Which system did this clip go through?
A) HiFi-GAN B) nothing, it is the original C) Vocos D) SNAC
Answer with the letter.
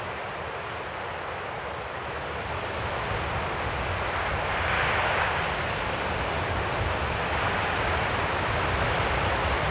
B